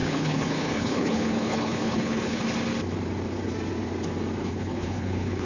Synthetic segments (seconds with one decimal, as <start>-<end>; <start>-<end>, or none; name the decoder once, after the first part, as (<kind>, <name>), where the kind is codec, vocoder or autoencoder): 0.0-2.4 (codec, HILCodec); 4.4-5.5